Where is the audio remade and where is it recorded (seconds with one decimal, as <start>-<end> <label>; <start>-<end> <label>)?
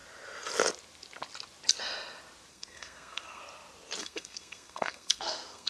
0.0-2.5 recorded; 2.5-3.4 remade; 3.4-4.0 recorded; 4.0-5.7 remade